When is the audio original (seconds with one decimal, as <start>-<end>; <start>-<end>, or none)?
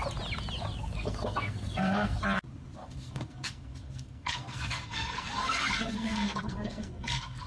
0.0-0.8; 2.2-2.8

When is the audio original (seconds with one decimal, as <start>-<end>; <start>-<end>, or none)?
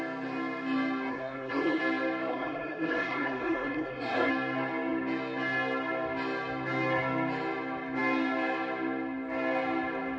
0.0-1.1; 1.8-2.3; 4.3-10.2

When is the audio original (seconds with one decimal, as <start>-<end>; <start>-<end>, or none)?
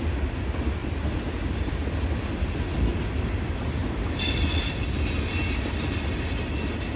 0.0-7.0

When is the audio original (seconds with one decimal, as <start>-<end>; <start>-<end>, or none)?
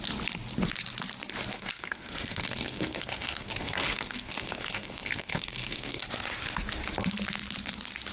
0.0-1.5; 6.0-8.1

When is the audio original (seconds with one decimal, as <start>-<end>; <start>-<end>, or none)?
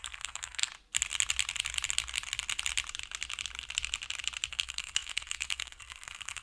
0.7-4.5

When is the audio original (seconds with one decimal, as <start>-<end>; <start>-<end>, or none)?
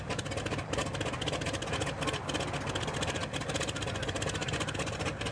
0.0-5.3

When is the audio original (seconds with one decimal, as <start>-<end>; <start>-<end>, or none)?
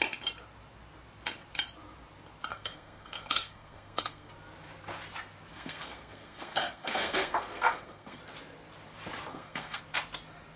0.0-2.5; 4.3-5.5; 8.2-9.3; 9.8-10.6